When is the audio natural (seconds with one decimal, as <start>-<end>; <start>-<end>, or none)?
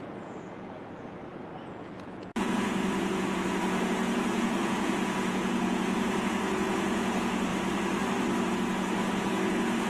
1.2-1.7; 7.5-8.5